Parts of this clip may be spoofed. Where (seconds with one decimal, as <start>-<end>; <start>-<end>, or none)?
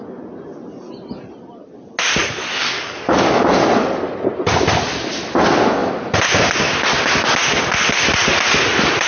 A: 2.2-3.4